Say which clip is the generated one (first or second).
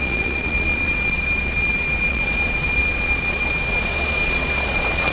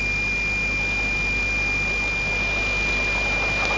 first